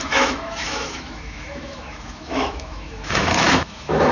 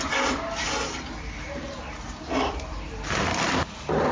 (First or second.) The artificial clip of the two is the first